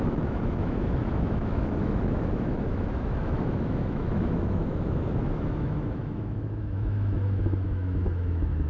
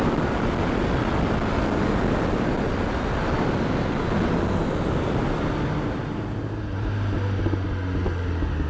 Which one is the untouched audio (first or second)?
second